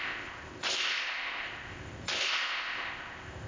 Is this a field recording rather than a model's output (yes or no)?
no